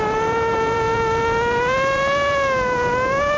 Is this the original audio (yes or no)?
no